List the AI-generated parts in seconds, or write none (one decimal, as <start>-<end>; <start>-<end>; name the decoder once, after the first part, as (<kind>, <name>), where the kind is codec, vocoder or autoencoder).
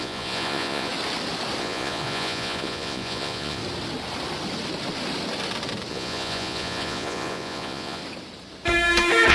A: 0.0-0.9 (vocoder, Vocos); 1.6-3.6; 5.9-8.0